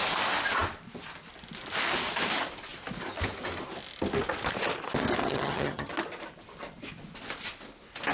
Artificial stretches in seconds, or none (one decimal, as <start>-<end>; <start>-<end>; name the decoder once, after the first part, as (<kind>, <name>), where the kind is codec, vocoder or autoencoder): 5.2-5.9 (vocoder, HiFi-GAN)